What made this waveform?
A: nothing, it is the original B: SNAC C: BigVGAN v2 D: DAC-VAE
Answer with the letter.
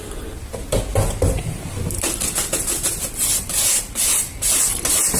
A